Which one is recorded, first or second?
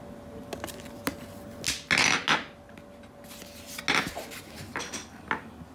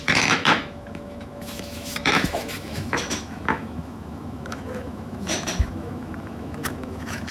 first